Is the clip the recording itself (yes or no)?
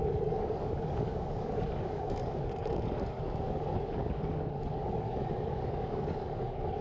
no